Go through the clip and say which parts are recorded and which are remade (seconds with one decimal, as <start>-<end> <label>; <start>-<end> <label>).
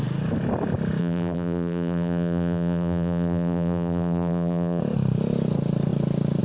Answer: 0.0-1.0 recorded; 1.0-4.8 remade; 4.8-6.4 recorded